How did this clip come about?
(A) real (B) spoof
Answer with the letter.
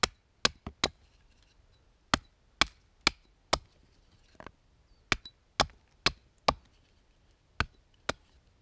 A